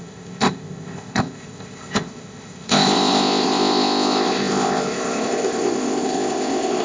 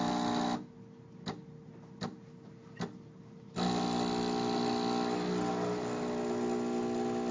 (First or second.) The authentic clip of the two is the second